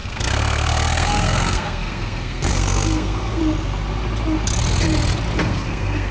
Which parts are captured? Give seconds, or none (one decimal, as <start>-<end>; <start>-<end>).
3.4-5.4